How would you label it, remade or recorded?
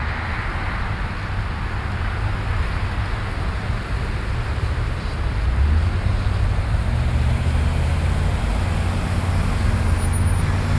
recorded